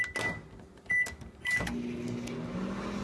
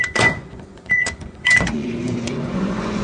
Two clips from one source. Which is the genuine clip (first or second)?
first